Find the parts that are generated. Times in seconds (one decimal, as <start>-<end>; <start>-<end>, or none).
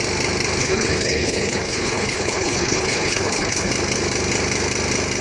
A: 0.6-3.7